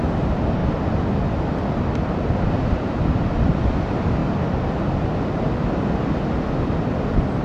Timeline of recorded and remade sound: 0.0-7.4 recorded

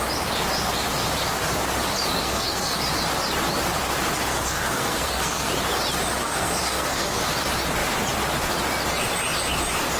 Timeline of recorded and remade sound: 0.0-2.2 recorded; 2.2-2.8 remade; 2.8-4.3 recorded; 4.3-5.5 remade; 5.5-6.2 recorded; 6.2-7.2 remade; 7.2-10.0 recorded

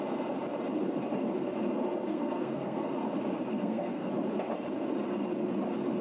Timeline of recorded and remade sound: 0.0-2.1 recorded; 2.1-2.9 remade; 2.9-3.5 recorded; 3.5-4.1 remade; 4.1-6.0 recorded

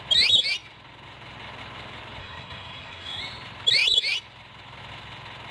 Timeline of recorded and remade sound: 0.0-2.2 recorded; 2.2-3.2 remade; 3.2-5.5 recorded

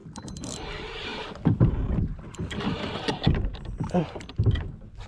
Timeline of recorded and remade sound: 0.0-5.1 recorded

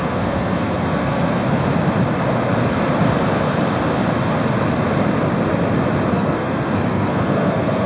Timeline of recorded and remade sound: 0.0-1.4 remade; 1.4-6.1 recorded; 6.1-7.9 remade

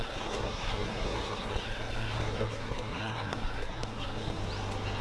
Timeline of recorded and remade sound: 0.0-4.4 remade; 4.4-5.0 recorded